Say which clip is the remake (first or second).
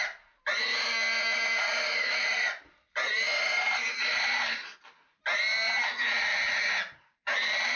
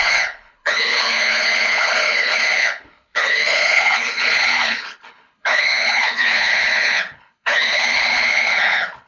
second